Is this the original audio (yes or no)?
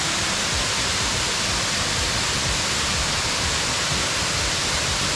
yes